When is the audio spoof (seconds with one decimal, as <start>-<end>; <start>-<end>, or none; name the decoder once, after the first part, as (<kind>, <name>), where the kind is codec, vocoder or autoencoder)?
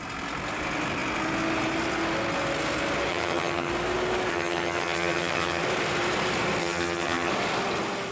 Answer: 3.1-3.7 (vocoder, HiFi-GAN); 4.3-5.6; 6.6-7.3